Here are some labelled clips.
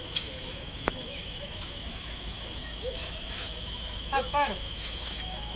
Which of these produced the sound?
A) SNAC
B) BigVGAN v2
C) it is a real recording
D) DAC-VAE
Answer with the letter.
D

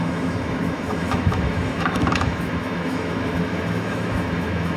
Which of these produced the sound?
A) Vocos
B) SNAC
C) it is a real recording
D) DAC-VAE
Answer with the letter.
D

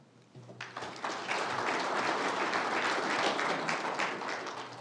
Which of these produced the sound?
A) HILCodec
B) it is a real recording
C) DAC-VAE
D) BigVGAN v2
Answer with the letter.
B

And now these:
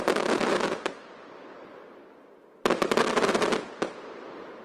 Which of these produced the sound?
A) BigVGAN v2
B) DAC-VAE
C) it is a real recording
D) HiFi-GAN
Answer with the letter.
C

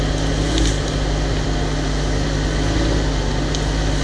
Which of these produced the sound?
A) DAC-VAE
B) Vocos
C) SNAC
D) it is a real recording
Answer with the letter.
D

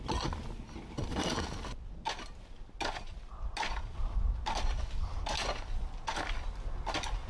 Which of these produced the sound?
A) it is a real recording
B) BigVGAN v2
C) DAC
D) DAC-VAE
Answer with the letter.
A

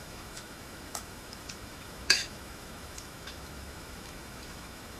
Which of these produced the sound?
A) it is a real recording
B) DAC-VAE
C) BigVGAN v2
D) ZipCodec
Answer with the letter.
B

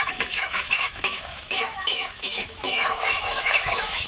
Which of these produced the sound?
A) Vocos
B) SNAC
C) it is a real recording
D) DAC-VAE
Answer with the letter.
D